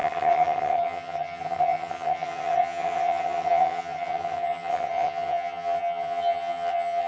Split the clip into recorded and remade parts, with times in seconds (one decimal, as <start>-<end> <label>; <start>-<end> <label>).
0.0-7.1 remade